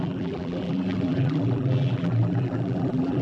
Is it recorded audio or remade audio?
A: remade